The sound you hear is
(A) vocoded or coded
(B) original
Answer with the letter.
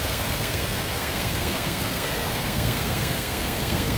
A